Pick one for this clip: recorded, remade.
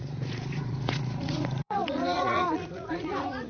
remade